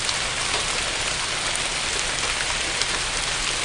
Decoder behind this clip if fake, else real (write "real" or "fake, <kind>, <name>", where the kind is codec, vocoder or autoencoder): real